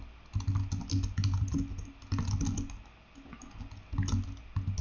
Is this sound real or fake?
real